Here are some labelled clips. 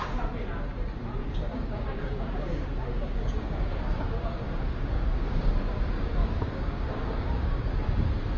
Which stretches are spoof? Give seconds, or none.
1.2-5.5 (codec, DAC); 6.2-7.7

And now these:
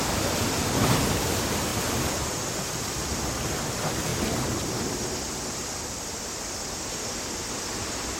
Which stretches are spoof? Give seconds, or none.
0.0-1.7 (vocoder, BigVGAN v2); 2.4-8.2

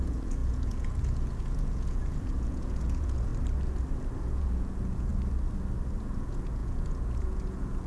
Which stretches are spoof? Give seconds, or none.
0.0-3.3 (vocoder, Vocos); 4.2-5.1; 6.0-7.9

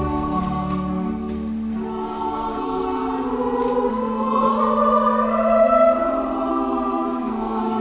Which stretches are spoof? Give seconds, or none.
0.0-3.0 (codec, SNAC); 3.9-4.5; 6.5-7.8

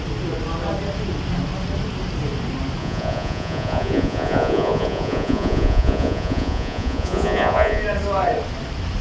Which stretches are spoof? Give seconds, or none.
2.8-7.8 (vocoder, Vocos)

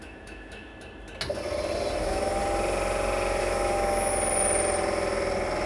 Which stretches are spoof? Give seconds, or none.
0.0-0.7 (autoencoder, DAC-VAE); 2.0-2.4; 3.4-4.1

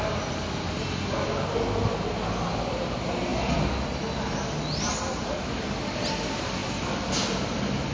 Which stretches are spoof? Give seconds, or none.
none